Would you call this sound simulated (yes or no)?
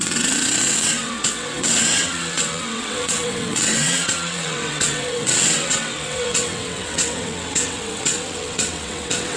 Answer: yes